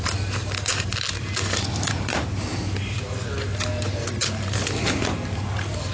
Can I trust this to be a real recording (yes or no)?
yes